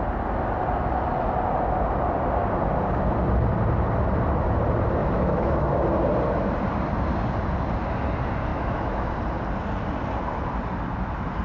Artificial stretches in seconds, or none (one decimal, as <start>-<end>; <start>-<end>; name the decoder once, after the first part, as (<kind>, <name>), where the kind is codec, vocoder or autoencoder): 5.0-5.7 (autoencoder, DAC-VAE); 8.5-9.1